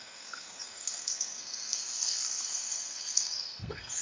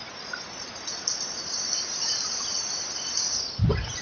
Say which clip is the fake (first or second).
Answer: first